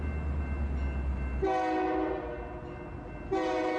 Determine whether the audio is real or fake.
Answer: real